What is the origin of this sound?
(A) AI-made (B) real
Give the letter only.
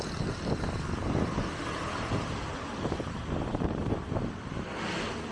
B